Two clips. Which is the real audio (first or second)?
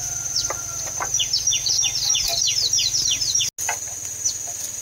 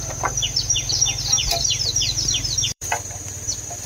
first